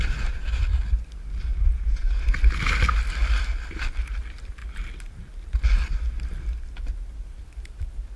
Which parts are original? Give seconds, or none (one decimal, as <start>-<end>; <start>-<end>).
0.0-1.5; 2.2-8.2